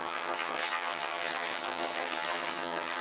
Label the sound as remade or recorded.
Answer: remade